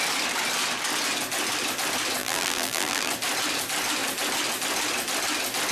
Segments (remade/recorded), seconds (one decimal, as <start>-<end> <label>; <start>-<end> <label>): 0.0-2.2 recorded; 2.2-3.1 remade; 3.1-5.7 recorded